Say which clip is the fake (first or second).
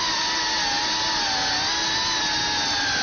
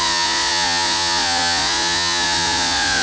second